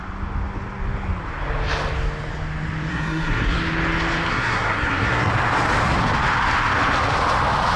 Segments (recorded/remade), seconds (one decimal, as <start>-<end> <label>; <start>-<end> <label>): 0.0-2.9 recorded; 2.9-3.6 remade; 3.6-4.3 recorded; 4.3-5.3 remade; 5.3-7.8 recorded